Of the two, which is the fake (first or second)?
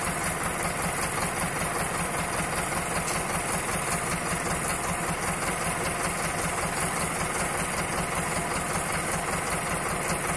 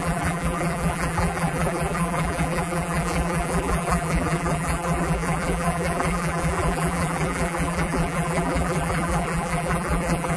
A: second